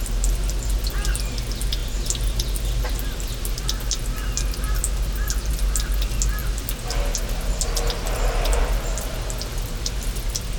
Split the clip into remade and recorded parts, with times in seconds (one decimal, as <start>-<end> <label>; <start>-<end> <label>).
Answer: 0.0-10.6 recorded